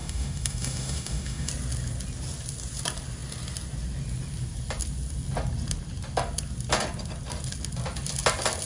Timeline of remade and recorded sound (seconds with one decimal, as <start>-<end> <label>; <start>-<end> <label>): 0.0-1.5 remade; 1.5-8.7 recorded